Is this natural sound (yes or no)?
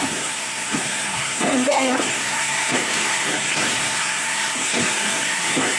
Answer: no